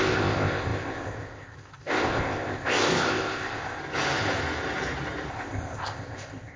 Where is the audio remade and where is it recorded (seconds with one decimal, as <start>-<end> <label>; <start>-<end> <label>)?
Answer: 0.0-3.8 remade; 3.8-5.3 recorded; 5.3-6.6 remade